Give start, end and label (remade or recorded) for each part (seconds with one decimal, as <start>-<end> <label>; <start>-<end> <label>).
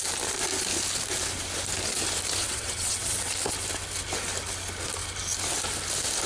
0.0-2.4 recorded; 2.4-3.3 remade; 3.3-6.3 recorded